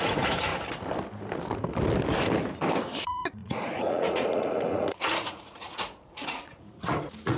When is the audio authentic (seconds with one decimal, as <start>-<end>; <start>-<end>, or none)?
0.5-3.0